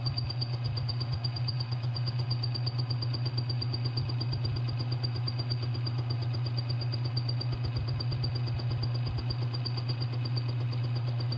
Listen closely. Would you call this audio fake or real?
real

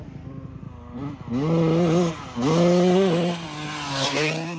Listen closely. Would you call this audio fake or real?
real